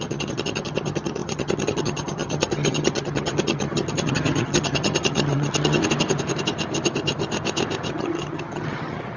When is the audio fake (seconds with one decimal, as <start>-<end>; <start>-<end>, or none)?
0.0-5.8; 7.9-9.2